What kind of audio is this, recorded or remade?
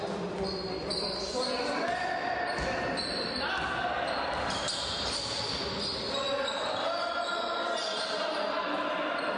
recorded